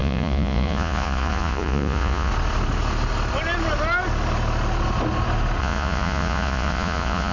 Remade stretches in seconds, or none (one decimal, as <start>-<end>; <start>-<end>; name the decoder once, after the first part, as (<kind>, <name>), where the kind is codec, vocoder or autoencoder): 0.0-2.3 (vocoder, Vocos); 5.6-7.3